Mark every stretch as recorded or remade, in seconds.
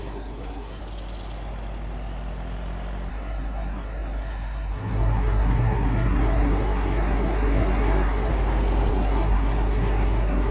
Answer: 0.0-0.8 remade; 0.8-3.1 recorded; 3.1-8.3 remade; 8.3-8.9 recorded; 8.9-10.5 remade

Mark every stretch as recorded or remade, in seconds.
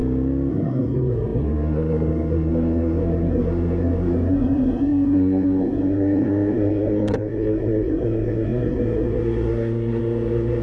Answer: 0.0-0.5 recorded; 0.5-10.6 remade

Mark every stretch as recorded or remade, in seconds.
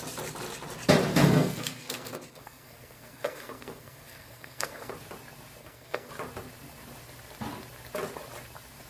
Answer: 0.0-1.1 recorded; 1.1-4.9 remade; 4.9-5.6 recorded; 5.6-6.1 remade; 6.1-8.9 recorded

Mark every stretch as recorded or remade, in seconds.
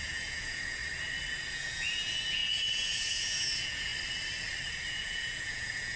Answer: 0.0-0.8 remade; 0.8-1.5 recorded; 1.5-3.9 remade; 3.9-4.9 recorded; 4.9-6.0 remade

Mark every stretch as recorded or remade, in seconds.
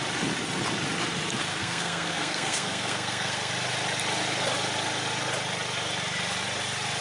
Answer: 0.0-1.5 recorded; 1.5-3.5 remade; 3.5-7.0 recorded